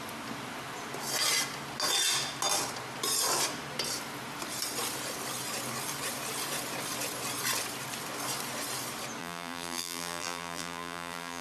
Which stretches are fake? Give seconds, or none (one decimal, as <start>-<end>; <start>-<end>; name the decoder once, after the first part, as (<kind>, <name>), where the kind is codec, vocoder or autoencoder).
9.2-11.4 (vocoder, BigVGAN v2)